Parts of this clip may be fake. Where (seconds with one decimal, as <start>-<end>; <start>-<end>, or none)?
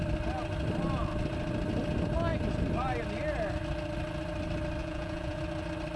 4.8-5.4